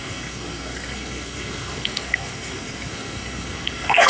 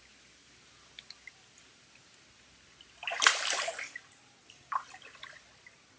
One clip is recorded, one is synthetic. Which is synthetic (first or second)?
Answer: first